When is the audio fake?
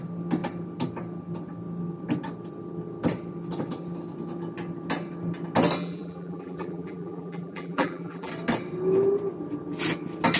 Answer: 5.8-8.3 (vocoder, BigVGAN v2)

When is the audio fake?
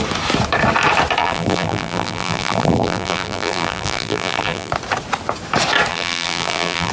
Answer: 1.2-4.7 (vocoder, BigVGAN v2); 5.9-6.9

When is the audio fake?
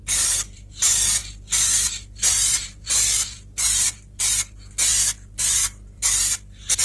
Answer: 0.0-6.8 (vocoder, BigVGAN v2)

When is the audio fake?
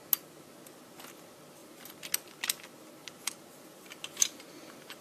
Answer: none